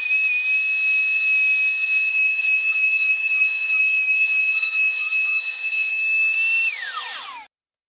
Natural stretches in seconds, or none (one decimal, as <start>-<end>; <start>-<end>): 0.0-2.1; 6.0-7.9